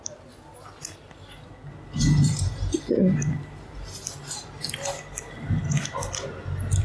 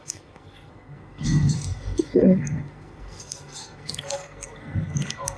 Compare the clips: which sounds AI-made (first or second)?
second